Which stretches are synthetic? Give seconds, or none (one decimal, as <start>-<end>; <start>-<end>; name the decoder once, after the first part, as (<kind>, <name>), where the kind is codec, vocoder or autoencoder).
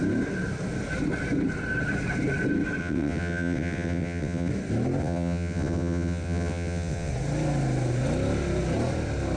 2.8-4.5 (vocoder, WaveNeXt); 5.0-7.1